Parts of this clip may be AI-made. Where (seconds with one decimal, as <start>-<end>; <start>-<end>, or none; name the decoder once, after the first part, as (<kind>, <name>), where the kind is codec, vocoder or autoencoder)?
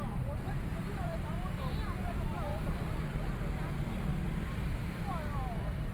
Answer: 0.7-1.2 (vocoder, BigVGAN v2); 2.3-2.8